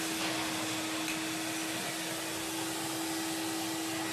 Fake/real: real